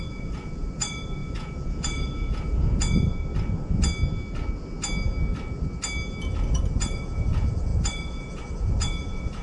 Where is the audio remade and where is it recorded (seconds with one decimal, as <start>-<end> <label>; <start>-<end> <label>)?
0.0-3.3 remade; 3.3-6.4 recorded; 6.4-9.4 remade